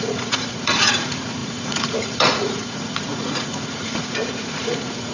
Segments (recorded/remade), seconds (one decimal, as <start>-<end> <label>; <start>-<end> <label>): 0.0-5.1 remade